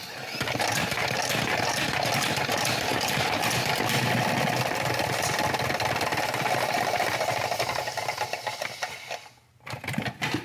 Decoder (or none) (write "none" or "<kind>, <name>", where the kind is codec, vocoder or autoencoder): none